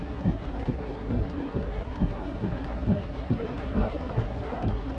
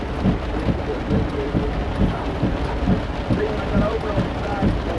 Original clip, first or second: second